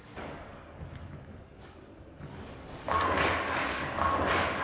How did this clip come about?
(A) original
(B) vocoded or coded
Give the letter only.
B